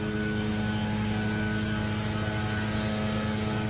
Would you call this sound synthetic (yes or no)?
no